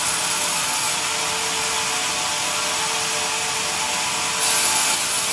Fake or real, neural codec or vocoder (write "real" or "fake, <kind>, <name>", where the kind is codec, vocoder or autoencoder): real